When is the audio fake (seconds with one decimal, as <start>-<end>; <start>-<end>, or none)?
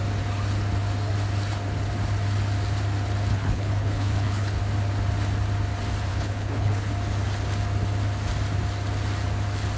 3.3-4.6; 6.1-6.9